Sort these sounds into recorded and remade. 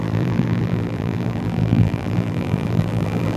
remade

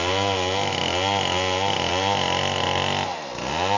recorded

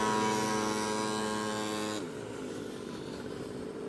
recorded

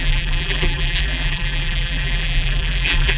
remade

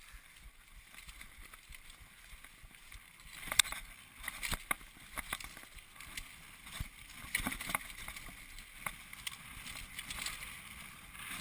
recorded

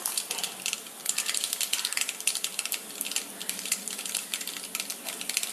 recorded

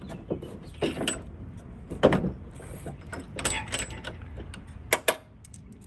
recorded